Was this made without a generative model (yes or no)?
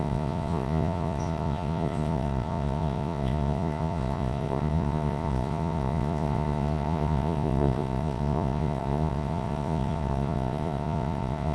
no